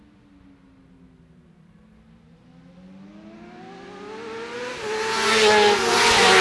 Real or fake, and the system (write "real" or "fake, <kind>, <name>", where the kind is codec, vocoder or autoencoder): real